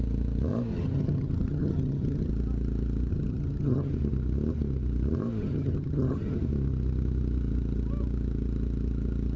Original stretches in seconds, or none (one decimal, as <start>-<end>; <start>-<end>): 0.0-0.7; 2.3-3.1; 3.9-5.4; 6.4-9.4